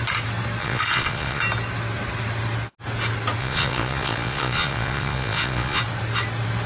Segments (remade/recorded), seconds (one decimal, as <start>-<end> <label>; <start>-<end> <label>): 0.0-0.6 recorded; 0.6-1.4 remade; 1.4-3.4 recorded; 3.4-5.8 remade; 5.8-6.7 recorded